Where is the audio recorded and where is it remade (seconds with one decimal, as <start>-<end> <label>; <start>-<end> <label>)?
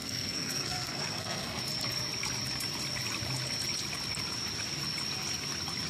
0.0-1.6 remade; 1.6-5.9 recorded